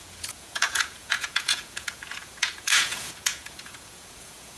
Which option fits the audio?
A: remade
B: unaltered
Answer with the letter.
A